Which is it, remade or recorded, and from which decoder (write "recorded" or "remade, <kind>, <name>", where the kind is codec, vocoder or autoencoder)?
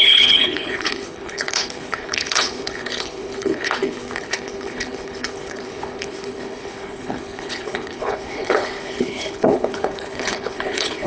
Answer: remade, codec, HILCodec